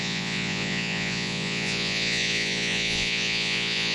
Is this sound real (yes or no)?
no